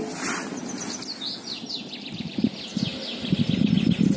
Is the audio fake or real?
real